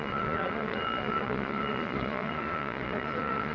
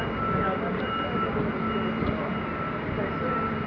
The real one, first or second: second